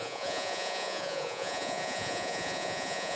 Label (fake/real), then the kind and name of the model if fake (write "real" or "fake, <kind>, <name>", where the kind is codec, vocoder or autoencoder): fake, vocoder, Vocos